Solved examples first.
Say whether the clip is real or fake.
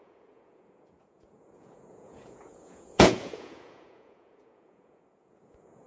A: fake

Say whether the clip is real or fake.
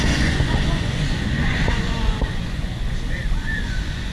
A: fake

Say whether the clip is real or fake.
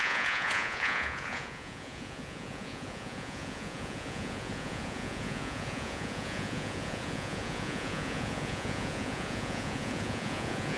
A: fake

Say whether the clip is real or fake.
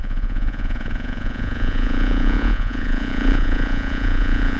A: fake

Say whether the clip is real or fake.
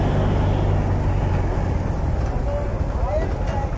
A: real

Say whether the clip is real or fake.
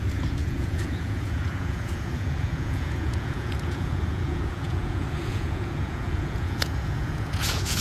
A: fake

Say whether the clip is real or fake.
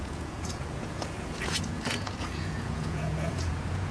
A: fake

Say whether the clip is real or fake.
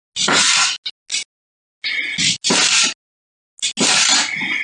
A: real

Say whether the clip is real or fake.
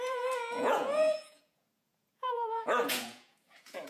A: fake